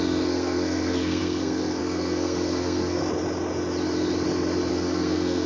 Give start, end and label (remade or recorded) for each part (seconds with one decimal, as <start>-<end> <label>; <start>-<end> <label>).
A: 0.0-3.0 remade; 3.0-4.7 recorded; 4.7-5.5 remade